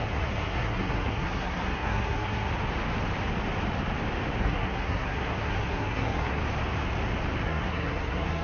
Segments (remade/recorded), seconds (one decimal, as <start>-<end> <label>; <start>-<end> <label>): 0.0-2.5 remade; 2.5-4.4 recorded; 4.4-6.4 remade; 6.4-7.4 recorded; 7.4-8.4 remade